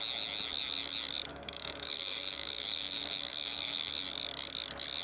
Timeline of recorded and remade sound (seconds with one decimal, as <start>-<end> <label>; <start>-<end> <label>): 0.0-1.3 recorded; 1.3-3.9 remade; 3.9-5.0 recorded

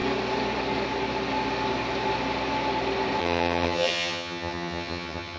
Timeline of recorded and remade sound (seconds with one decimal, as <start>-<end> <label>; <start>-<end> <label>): 0.0-3.2 recorded; 3.2-5.4 remade

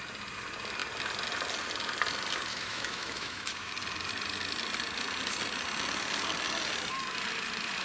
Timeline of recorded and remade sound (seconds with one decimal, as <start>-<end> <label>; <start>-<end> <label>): 0.0-2.5 recorded; 2.5-3.7 remade; 3.7-7.8 recorded

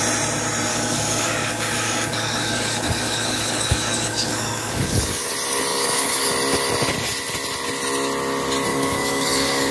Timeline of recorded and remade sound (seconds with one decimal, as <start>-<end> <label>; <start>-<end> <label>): 0.0-0.7 recorded; 0.7-5.3 remade; 5.3-5.7 recorded; 5.7-6.3 remade; 6.3-8.7 recorded; 8.7-9.7 remade